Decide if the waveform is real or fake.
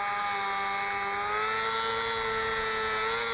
real